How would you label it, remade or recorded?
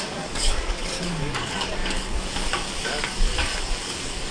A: remade